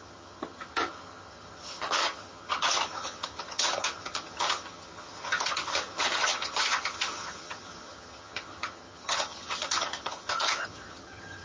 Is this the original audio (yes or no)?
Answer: no